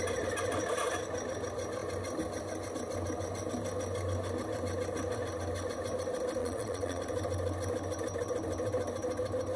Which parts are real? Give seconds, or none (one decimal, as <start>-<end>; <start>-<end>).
0.0-6.4; 7.0-9.6